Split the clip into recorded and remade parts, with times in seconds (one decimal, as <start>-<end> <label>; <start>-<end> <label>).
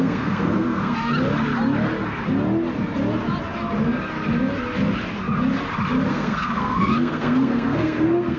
0.0-1.1 remade; 1.1-6.1 recorded; 6.1-8.4 remade